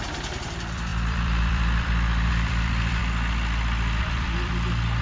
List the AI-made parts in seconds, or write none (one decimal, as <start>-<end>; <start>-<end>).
0.0-3.0; 4.0-5.0

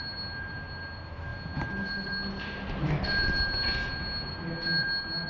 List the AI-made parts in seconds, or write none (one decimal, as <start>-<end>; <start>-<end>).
none

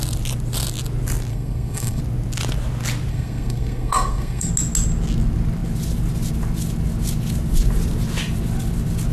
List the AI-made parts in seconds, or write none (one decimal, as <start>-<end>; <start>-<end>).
1.3-2.0; 3.1-4.5

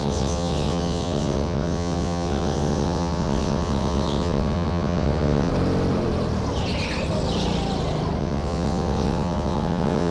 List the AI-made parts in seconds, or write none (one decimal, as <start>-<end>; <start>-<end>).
0.0-5.5; 8.2-10.1